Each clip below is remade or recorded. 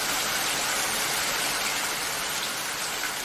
recorded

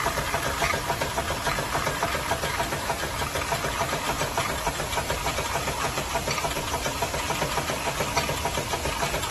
recorded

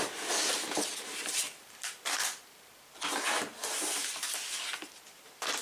recorded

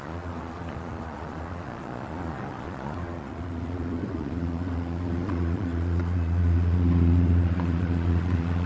remade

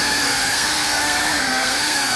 remade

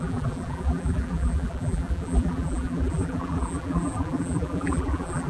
remade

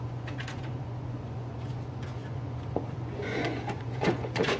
remade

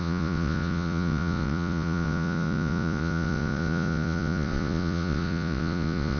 remade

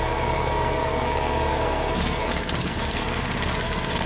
remade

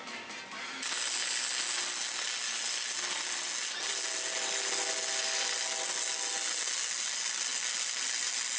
recorded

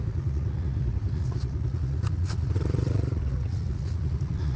remade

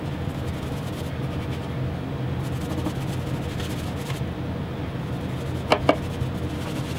recorded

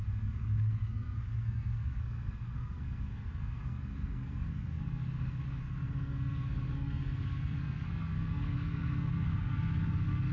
remade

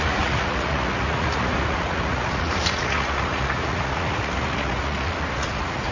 remade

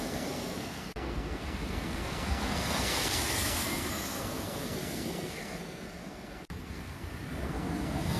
remade